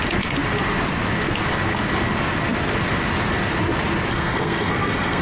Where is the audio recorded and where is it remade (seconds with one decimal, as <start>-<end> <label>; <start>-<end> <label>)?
0.0-4.1 recorded; 4.1-5.2 remade